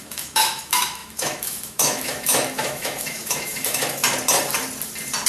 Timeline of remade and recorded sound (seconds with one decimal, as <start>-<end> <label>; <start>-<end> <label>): 0.0-4.0 remade; 4.0-5.3 recorded